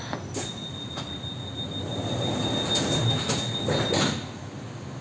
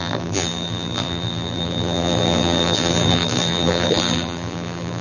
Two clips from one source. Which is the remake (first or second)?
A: second